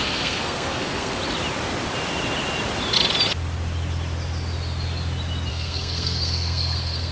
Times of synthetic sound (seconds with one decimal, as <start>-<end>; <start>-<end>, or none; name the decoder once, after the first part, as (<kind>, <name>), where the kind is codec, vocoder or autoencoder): 0.0-1.2 (codec, SNAC); 5.5-7.1